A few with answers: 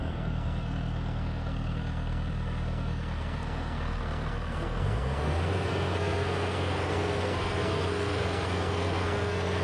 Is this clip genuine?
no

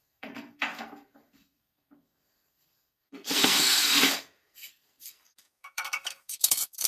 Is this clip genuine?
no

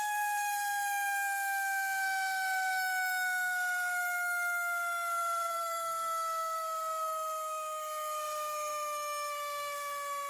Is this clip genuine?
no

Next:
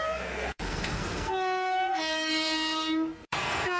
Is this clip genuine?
no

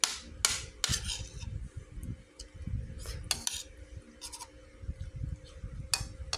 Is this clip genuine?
yes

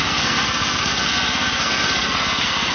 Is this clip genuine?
no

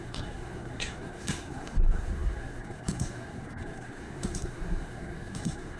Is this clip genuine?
no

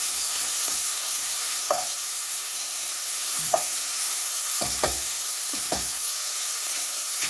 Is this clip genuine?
no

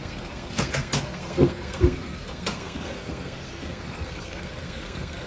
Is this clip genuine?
no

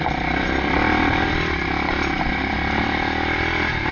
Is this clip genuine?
yes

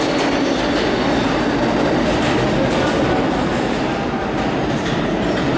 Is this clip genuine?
yes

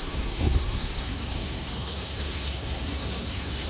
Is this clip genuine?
no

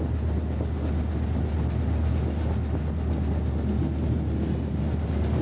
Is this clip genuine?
yes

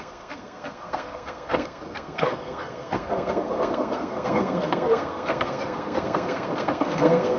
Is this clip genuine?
no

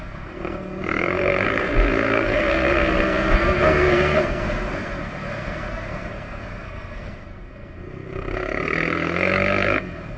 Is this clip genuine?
no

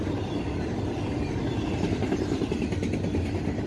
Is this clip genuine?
yes